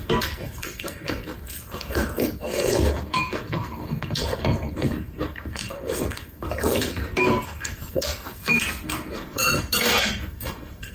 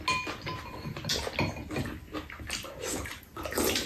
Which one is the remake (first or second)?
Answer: first